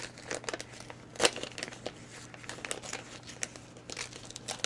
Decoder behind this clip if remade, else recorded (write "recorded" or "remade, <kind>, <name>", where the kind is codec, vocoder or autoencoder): recorded